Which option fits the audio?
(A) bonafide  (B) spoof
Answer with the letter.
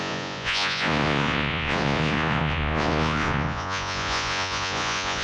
B